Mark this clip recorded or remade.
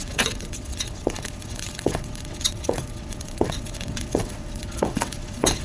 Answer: remade